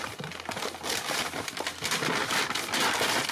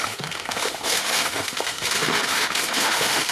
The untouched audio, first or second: first